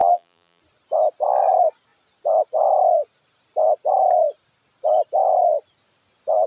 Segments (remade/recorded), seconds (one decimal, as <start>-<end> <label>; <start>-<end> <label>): 0.0-0.6 remade; 0.6-6.5 recorded